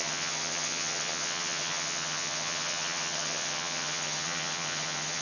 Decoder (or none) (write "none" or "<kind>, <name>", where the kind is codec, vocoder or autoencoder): vocoder, HiFi-GAN